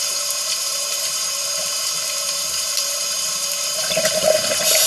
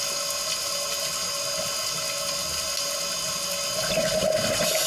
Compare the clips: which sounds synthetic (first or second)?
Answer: first